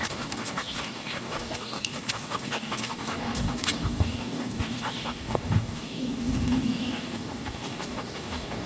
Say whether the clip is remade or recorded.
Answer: remade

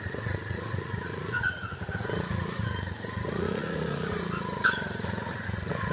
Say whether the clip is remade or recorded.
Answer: remade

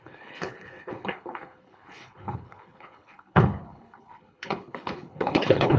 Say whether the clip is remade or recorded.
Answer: remade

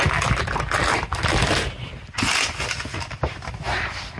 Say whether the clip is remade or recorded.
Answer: recorded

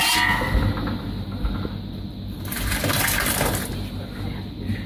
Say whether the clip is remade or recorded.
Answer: recorded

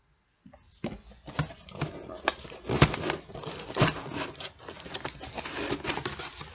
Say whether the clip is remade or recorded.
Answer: recorded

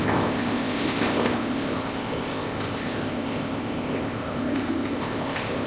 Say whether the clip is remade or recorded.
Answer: remade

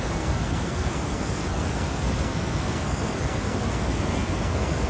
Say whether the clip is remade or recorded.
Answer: remade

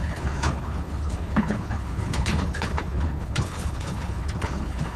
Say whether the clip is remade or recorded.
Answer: remade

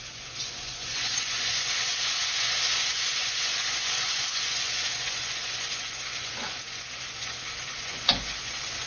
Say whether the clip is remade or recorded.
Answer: remade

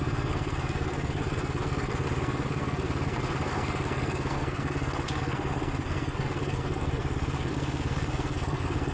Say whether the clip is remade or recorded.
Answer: remade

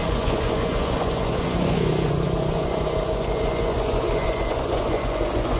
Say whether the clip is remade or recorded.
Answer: remade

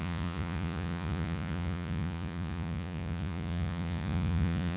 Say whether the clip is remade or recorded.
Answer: remade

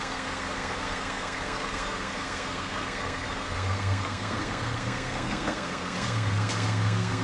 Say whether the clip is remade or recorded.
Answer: remade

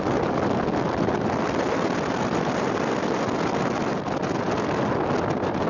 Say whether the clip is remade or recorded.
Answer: recorded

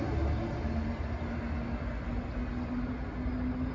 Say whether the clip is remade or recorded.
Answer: recorded